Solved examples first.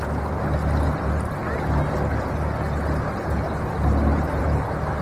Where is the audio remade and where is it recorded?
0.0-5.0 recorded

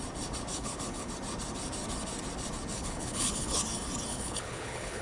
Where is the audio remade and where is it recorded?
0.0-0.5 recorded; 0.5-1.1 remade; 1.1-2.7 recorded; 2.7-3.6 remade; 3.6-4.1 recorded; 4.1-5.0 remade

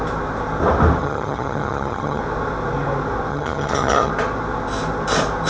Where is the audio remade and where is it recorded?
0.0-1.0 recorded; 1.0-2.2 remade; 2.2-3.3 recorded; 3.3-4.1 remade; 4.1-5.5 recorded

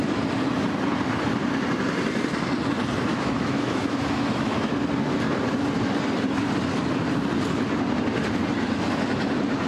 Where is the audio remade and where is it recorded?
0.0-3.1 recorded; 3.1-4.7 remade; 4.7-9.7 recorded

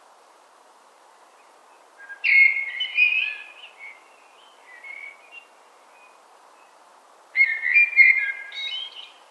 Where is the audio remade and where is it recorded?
0.0-1.6 remade; 1.6-6.1 recorded; 6.1-6.9 remade; 6.9-8.1 recorded; 8.1-9.3 remade

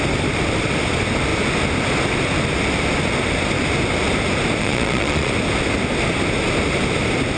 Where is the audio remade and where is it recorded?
0.0-4.6 recorded; 4.6-5.3 remade; 5.3-7.4 recorded

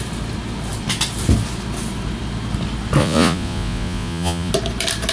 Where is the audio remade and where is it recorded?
0.0-3.0 recorded; 3.0-4.5 remade; 4.5-5.1 recorded